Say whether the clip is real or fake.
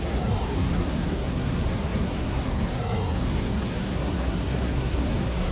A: fake